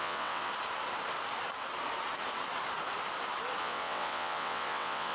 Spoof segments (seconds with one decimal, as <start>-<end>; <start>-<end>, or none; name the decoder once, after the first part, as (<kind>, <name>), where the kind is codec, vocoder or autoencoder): 0.0-0.5 (vocoder, WaveNeXt); 3.6-5.1